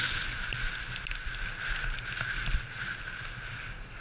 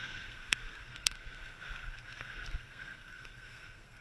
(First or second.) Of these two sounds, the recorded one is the first